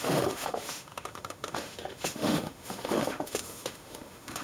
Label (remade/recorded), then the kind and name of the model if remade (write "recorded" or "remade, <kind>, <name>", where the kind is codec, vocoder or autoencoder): remade, autoencoder, DAC-VAE